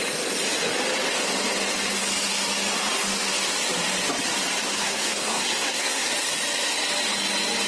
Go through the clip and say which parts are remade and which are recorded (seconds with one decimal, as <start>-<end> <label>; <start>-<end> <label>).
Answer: 0.0-4.6 recorded; 4.6-6.1 remade; 6.1-7.7 recorded